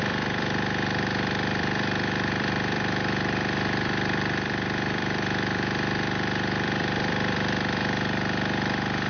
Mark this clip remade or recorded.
remade